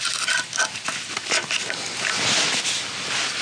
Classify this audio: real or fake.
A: real